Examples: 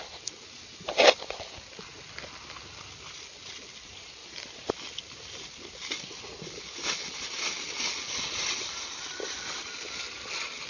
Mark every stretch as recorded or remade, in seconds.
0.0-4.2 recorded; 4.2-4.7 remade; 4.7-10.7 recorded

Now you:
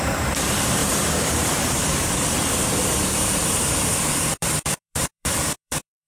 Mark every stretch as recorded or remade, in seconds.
0.0-6.1 remade

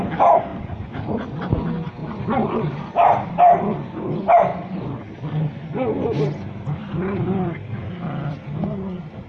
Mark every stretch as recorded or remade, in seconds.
0.0-0.5 recorded; 0.5-1.1 remade; 1.1-2.0 recorded; 2.0-3.3 remade; 3.3-4.5 recorded; 4.5-5.0 remade; 5.0-6.8 recorded; 6.8-8.3 remade; 8.3-9.3 recorded

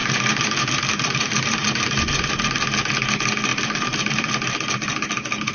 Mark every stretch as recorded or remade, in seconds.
0.0-2.3 remade; 2.3-3.5 recorded; 3.5-4.3 remade; 4.3-5.5 recorded

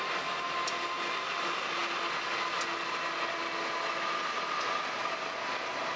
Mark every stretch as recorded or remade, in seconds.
0.0-6.0 recorded

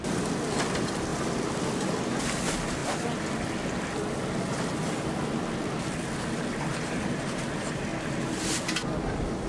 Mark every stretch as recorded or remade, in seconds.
0.0-2.8 remade; 2.8-5.7 recorded; 5.7-7.9 remade; 7.9-9.5 recorded

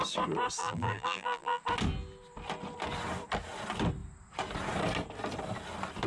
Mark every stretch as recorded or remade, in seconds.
0.0-0.6 recorded; 0.6-1.6 remade; 1.6-6.1 recorded